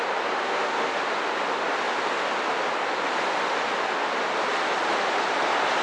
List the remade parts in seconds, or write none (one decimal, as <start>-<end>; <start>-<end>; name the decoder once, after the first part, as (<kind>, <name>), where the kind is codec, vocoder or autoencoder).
0.4-1.0 (autoencoder, DAC-VAE)

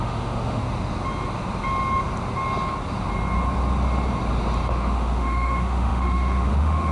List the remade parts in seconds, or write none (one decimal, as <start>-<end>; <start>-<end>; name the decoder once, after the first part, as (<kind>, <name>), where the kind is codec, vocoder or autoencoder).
0.0-0.6 (autoencoder, DAC-VAE); 4.7-6.9